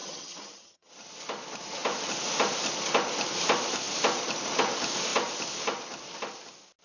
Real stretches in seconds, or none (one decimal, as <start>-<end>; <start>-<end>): 0.9-6.8